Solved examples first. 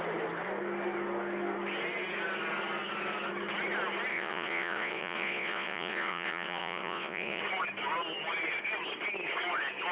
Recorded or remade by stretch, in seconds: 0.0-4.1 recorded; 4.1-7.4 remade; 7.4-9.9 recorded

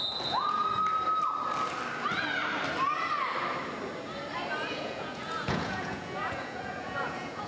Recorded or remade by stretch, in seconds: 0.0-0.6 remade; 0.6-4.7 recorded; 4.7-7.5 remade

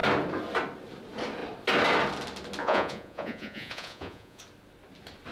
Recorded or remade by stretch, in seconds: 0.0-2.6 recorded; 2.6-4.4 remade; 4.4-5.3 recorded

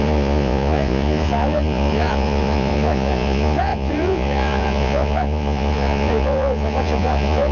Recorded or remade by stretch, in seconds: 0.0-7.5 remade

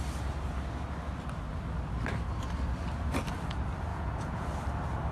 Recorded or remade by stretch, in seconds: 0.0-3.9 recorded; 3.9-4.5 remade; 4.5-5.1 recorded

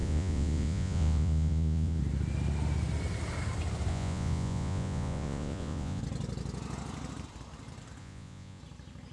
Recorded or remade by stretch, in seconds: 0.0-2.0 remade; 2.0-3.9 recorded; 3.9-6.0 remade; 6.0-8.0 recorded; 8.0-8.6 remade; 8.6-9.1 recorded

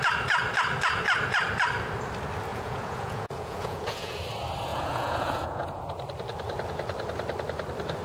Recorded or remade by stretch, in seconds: 0.0-2.5 recorded; 2.5-4.2 remade; 4.2-4.7 recorded; 4.7-5.8 remade; 5.8-8.0 recorded